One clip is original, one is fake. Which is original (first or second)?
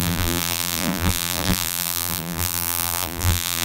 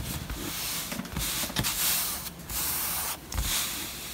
second